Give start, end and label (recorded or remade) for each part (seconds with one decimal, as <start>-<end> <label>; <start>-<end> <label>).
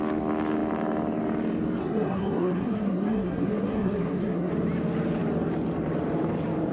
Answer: 0.0-1.8 recorded; 1.8-4.5 remade; 4.5-6.7 recorded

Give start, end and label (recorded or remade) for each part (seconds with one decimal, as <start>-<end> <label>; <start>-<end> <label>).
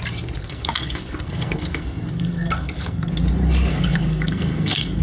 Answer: 0.0-0.4 recorded; 0.4-3.1 remade; 3.1-3.7 recorded; 3.7-5.0 remade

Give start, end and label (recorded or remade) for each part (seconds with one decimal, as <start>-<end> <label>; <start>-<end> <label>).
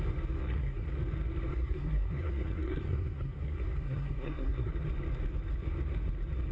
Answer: 0.0-0.4 recorded; 0.4-0.9 remade; 0.9-1.5 recorded; 1.5-4.7 remade; 4.7-6.5 recorded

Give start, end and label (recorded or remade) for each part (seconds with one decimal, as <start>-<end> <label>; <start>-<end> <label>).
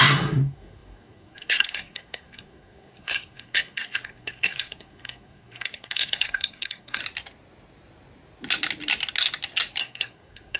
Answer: 0.0-7.0 remade; 7.0-9.8 recorded; 9.8-10.6 remade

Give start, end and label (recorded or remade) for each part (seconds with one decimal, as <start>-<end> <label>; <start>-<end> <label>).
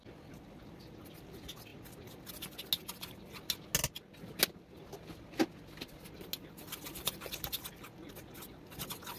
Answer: 0.0-9.2 recorded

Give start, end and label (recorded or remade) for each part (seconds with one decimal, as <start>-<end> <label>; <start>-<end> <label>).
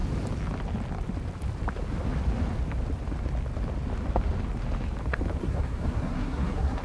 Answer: 0.0-5.4 recorded; 5.4-6.8 remade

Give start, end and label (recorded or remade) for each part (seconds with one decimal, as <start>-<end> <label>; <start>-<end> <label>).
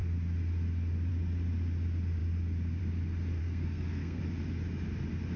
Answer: 0.0-3.4 recorded; 3.4-4.2 remade; 4.2-5.4 recorded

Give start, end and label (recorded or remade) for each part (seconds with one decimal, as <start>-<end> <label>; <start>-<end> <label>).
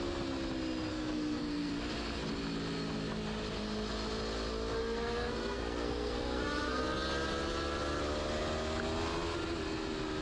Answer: 0.0-0.9 recorded; 0.9-1.7 remade; 1.7-4.8 recorded; 4.8-6.8 remade; 6.8-10.2 recorded